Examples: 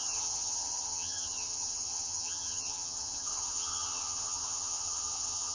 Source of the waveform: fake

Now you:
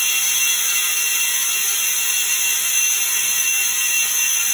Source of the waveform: real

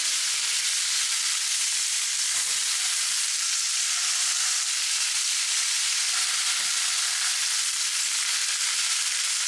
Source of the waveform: fake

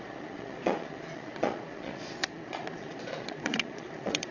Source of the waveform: fake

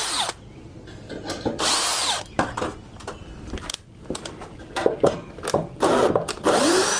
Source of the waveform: fake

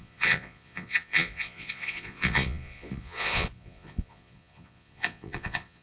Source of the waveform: fake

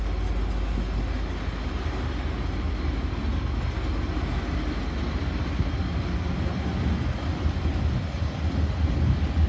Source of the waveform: real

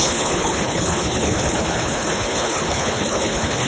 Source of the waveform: fake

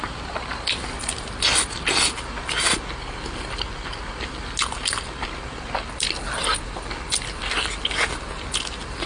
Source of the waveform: real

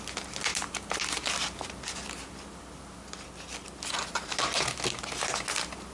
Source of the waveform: real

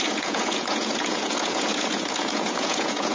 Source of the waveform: fake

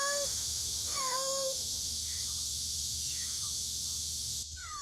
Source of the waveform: fake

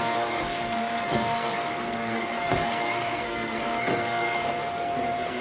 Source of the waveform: fake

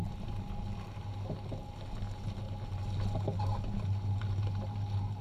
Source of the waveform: real